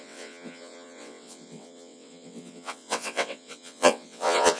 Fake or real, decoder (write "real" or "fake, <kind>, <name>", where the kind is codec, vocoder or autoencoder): fake, vocoder, WaveNeXt